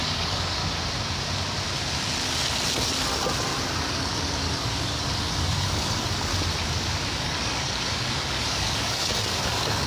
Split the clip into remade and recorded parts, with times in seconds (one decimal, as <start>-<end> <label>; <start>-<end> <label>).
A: 0.0-0.6 remade; 0.6-3.8 recorded; 3.8-6.3 remade; 6.3-7.1 recorded; 7.1-9.9 remade